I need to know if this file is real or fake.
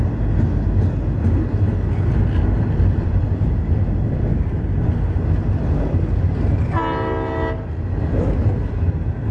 real